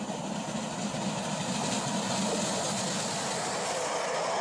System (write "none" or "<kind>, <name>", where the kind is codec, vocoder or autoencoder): none